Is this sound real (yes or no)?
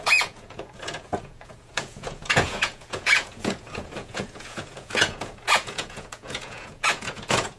no